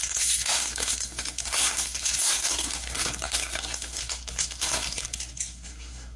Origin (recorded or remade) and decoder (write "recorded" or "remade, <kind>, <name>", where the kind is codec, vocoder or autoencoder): remade, codec, SNAC